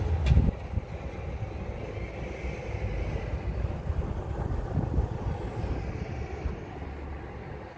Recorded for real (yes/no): yes